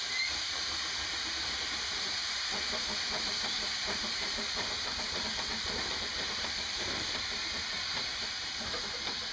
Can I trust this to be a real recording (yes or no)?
no